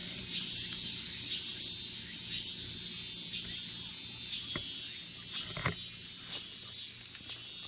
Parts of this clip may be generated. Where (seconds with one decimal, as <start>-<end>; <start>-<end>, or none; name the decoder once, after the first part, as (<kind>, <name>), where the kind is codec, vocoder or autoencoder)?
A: 0.0-1.7 (vocoder, BigVGAN v2)